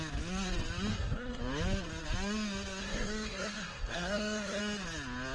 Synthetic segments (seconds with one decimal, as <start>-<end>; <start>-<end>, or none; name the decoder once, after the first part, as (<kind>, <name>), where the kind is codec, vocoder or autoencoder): 0.9-1.4 (codec, SNAC); 2.8-4.6